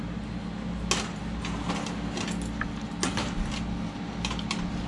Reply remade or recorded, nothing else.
recorded